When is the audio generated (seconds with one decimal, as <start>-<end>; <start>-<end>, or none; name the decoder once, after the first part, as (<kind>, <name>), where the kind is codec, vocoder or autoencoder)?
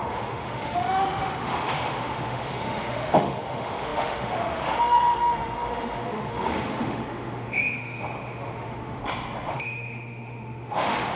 0.0-9.0 (autoencoder, DAC-VAE); 9.5-11.2